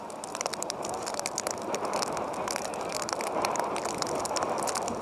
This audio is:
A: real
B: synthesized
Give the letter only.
A